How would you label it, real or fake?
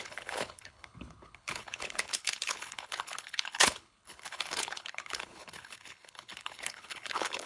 fake